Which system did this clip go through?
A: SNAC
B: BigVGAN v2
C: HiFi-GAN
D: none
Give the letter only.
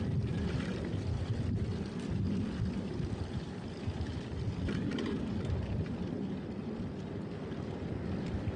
B